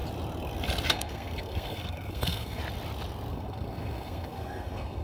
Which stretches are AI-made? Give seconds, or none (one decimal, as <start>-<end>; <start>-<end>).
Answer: 0.9-2.6; 3.3-5.0